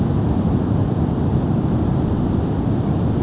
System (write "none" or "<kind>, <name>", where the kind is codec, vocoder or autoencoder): none